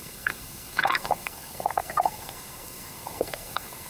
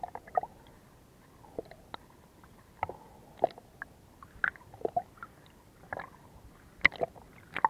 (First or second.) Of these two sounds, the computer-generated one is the first